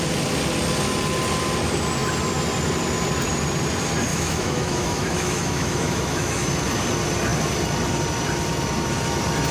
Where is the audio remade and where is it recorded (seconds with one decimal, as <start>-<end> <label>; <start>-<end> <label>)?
0.0-4.1 recorded; 4.1-6.5 remade; 6.5-9.5 recorded